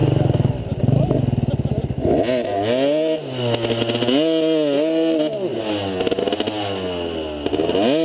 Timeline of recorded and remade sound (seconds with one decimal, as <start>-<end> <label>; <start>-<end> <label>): 0.0-8.0 recorded